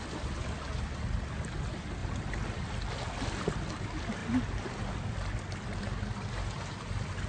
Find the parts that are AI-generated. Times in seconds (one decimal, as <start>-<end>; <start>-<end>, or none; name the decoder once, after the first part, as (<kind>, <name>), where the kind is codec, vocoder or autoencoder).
none